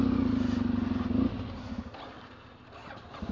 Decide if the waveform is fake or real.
real